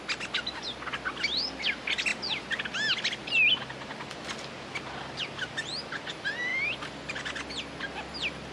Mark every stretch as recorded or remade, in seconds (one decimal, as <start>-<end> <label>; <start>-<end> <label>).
0.0-8.5 recorded